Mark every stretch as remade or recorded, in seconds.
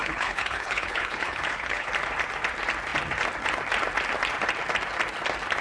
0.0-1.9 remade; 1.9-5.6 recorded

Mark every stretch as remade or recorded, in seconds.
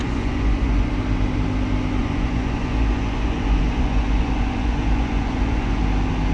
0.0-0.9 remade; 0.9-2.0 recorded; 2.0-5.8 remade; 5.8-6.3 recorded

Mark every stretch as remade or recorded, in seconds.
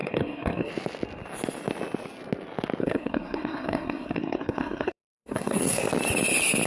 0.0-0.7 remade; 0.7-2.8 recorded; 2.8-5.9 remade; 5.9-6.7 recorded